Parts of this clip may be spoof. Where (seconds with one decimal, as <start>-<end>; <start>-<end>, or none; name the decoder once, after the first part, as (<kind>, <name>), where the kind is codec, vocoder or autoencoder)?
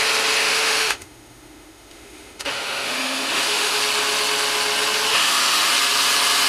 0.4-3.8 (autoencoder, DAC-VAE); 5.1-5.7